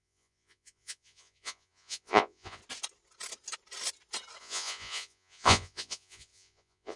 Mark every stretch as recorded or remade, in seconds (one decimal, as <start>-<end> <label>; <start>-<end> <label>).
0.0-2.6 remade; 2.6-4.4 recorded; 4.4-7.0 remade